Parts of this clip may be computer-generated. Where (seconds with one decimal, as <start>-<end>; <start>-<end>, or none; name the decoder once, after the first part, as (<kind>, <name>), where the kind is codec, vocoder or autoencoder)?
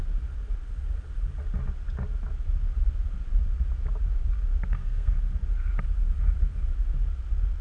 4.7-5.2 (codec, SNAC)